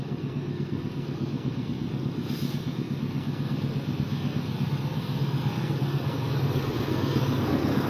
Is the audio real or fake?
fake